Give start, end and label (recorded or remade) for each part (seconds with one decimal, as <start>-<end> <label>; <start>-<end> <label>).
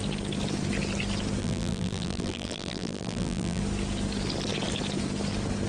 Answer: 0.0-1.4 recorded; 1.4-3.6 remade; 3.6-5.7 recorded